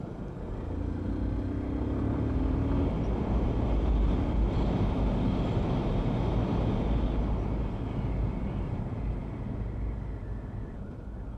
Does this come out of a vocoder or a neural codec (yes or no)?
no